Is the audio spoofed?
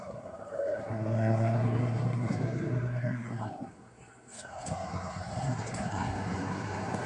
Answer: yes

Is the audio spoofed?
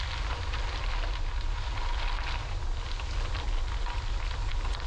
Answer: no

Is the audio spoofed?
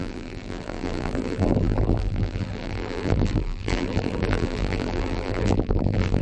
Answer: yes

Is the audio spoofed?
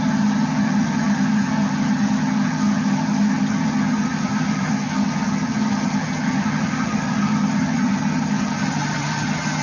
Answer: yes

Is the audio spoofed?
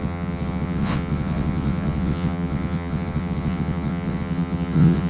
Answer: yes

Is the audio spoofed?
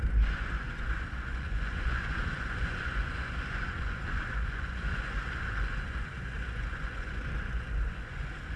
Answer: yes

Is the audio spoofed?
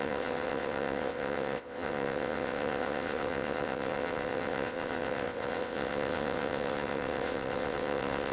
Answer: yes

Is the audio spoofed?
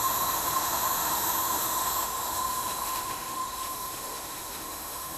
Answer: yes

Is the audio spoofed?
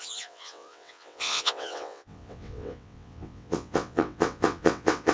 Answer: yes